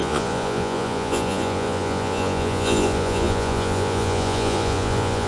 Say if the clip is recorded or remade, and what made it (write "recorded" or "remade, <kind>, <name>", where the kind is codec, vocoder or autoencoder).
remade, vocoder, Vocos